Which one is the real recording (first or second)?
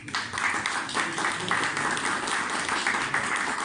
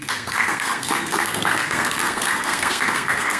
first